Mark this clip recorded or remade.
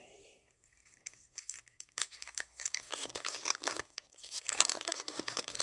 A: remade